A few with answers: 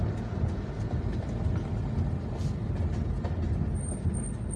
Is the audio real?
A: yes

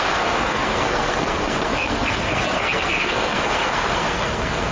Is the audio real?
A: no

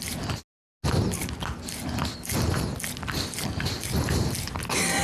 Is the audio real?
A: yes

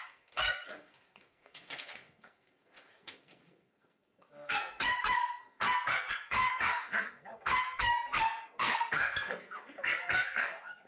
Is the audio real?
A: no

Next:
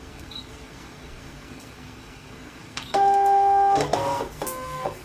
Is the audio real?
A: no